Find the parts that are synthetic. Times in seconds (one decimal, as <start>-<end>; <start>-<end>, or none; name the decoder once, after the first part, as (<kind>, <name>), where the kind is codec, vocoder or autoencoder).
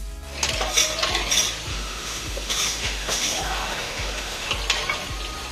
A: 1.7-4.5 (autoencoder, DAC-VAE)